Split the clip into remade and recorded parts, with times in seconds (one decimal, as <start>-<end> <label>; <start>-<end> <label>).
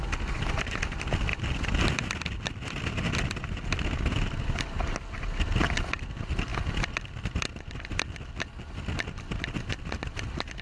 0.0-10.6 recorded